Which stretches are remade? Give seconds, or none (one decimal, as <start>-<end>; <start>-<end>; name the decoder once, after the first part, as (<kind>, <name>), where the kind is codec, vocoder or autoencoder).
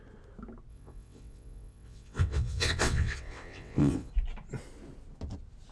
0.7-4.1 (vocoder, WaveNeXt)